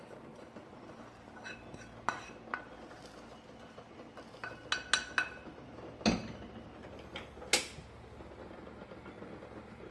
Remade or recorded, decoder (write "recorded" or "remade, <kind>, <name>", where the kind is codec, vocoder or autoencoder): recorded